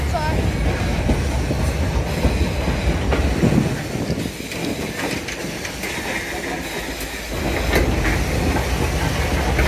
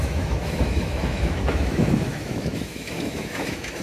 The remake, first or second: second